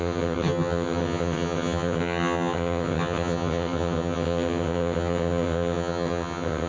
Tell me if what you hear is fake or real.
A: fake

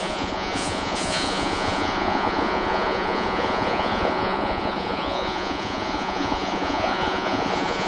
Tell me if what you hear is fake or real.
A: fake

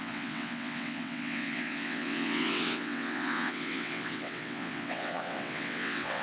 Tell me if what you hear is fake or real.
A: fake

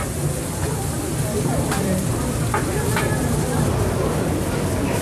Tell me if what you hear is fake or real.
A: fake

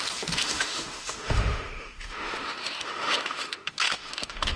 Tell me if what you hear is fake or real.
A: fake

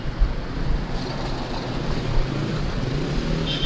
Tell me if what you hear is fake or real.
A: real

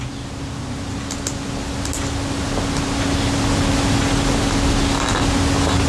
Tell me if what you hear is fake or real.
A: real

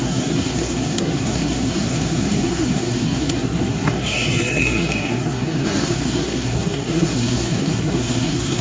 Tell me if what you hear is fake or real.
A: fake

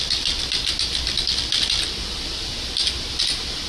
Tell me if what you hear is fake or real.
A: real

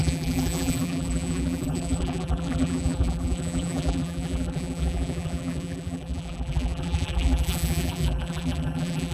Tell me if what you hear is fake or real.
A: fake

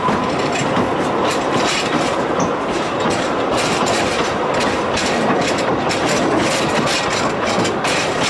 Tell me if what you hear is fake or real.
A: fake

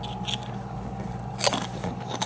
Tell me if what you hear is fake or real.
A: real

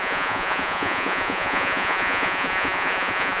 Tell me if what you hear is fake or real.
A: fake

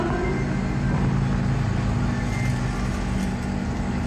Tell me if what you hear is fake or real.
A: real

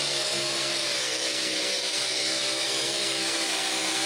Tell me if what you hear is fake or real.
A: fake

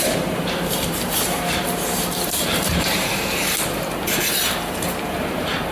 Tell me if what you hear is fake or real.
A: fake